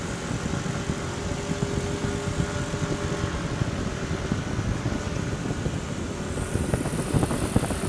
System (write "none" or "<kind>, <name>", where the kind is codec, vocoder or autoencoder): none